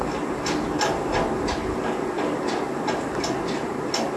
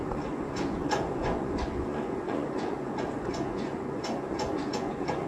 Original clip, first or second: first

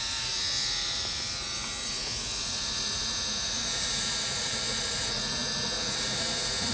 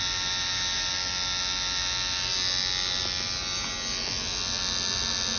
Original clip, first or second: second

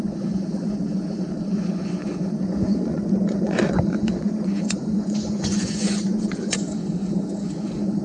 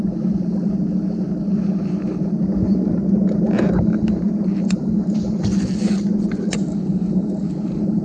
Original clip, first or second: second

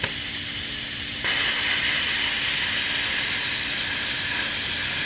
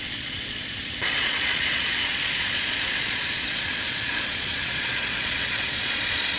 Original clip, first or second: first